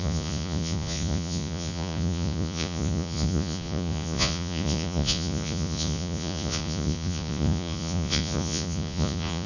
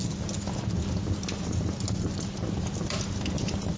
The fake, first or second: first